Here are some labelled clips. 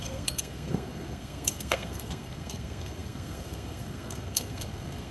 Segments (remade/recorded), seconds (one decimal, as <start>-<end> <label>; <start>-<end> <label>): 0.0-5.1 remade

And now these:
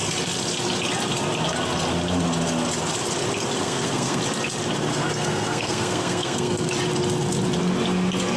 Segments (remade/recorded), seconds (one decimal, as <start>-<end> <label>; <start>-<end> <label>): 0.0-3.6 recorded; 3.6-4.2 remade; 4.2-4.9 recorded; 4.9-6.7 remade; 6.7-8.4 recorded

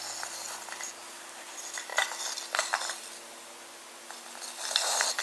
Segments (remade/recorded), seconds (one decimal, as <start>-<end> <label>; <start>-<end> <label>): 0.0-5.2 recorded

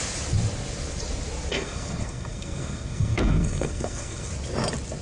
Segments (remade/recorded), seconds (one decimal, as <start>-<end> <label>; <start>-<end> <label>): 0.0-1.5 recorded; 1.5-4.3 remade; 4.3-5.0 recorded

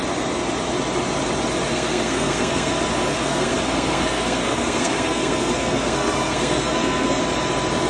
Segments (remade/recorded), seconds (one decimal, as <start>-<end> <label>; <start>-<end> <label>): 0.0-1.7 recorded; 1.7-2.7 remade; 2.7-3.1 recorded; 3.1-7.2 remade; 7.2-7.9 recorded

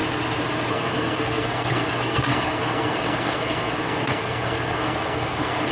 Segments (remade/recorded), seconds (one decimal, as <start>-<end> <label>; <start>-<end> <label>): 0.0-0.7 recorded; 0.7-5.7 remade

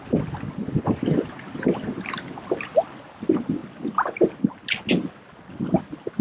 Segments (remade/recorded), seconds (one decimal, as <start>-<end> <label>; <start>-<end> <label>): 0.0-6.2 recorded

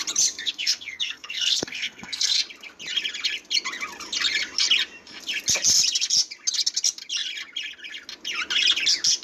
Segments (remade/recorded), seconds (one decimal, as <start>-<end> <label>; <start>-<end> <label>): 0.0-0.4 recorded; 0.4-2.4 remade; 2.4-9.2 recorded